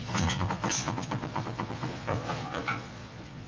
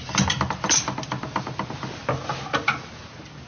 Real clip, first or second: second